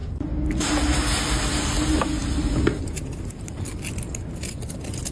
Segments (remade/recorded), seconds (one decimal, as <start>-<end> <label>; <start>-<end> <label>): 0.0-5.1 recorded